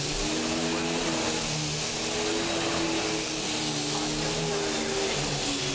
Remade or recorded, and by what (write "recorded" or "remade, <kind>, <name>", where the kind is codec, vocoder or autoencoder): remade, vocoder, BigVGAN v2